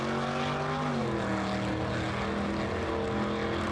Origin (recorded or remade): recorded